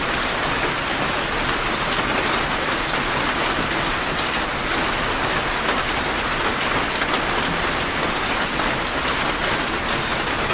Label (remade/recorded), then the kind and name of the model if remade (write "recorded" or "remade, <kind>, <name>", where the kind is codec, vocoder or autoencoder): recorded